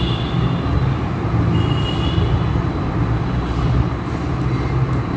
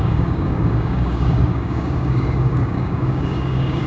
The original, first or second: first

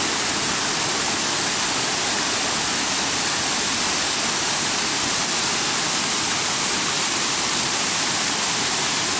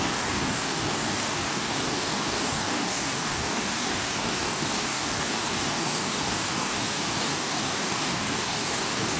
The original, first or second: first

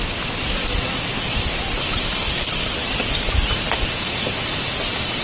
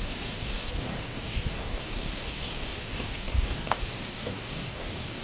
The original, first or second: first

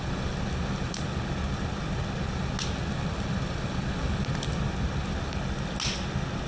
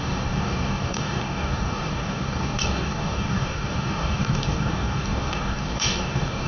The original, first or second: first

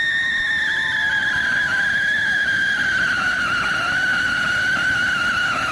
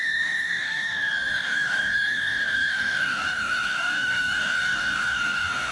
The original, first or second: first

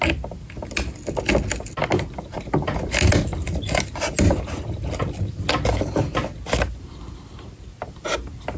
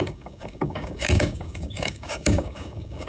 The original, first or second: first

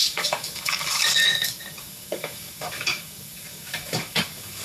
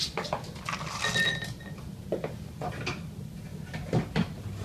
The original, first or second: second